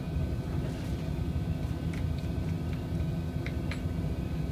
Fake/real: real